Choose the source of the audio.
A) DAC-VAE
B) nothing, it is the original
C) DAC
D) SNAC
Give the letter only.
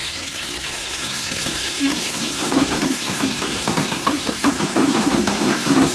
D